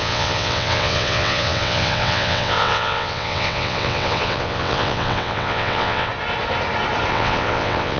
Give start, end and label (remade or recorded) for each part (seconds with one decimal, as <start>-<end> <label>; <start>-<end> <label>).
0.0-6.1 remade; 6.1-7.1 recorded; 7.1-8.0 remade